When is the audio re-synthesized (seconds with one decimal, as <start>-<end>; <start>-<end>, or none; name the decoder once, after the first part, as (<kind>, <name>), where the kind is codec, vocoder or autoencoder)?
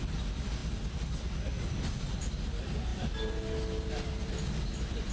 none